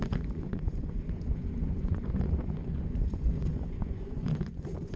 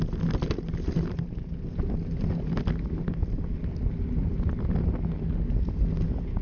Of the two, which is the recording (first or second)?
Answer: second